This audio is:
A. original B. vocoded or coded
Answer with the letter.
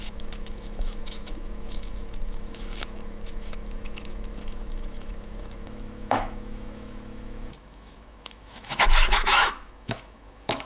B